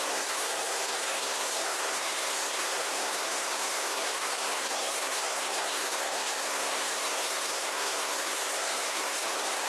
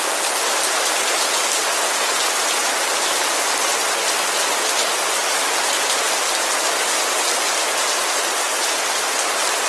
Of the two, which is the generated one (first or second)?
first